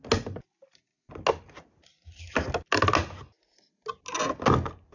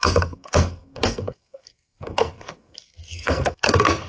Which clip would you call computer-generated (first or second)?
second